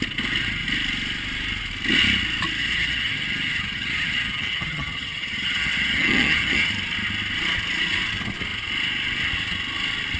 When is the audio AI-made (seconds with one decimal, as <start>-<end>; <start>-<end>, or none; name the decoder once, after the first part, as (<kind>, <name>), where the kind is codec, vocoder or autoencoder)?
2.6-6.7 (vocoder, HiFi-GAN)